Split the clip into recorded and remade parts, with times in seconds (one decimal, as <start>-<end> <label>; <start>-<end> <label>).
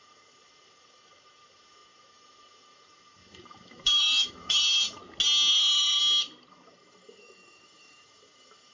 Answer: 0.0-5.0 remade; 5.0-5.5 recorded; 5.5-6.0 remade; 6.0-6.5 recorded; 6.5-8.7 remade